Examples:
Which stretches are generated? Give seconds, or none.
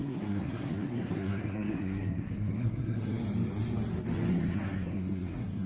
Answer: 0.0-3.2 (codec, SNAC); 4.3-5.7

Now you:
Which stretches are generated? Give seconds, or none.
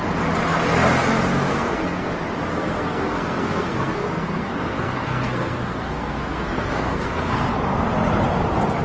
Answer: 1.5-2.1 (codec, SNAC); 2.5-7.5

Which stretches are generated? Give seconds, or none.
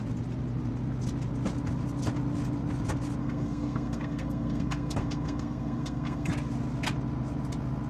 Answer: 3.2-6.3 (codec, SNAC)